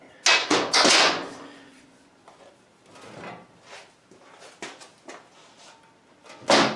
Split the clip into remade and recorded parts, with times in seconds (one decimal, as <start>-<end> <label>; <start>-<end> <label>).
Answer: 0.0-0.4 recorded; 0.4-2.5 remade; 2.5-6.8 recorded